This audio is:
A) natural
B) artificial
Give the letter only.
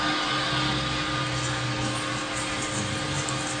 A